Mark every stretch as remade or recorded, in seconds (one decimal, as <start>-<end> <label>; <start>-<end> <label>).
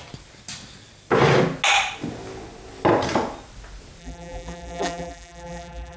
0.0-4.0 recorded; 4.0-6.0 remade